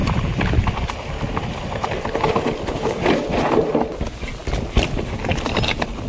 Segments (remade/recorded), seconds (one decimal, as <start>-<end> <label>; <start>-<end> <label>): 0.0-6.1 recorded